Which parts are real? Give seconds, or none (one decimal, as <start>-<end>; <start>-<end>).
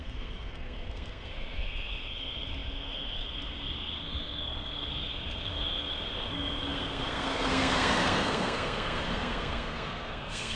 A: none